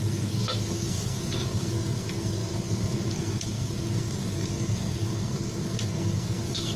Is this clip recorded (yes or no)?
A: no